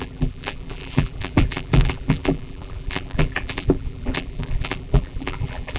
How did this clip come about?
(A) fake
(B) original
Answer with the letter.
A